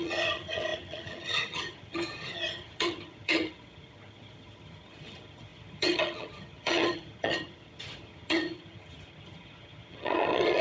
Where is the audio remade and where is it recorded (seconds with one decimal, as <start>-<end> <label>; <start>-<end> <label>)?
0.0-10.6 remade